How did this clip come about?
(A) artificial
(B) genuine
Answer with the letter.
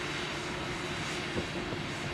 B